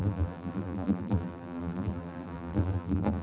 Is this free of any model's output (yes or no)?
no